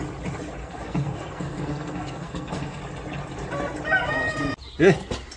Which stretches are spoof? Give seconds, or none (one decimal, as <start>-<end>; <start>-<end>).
0.6-2.8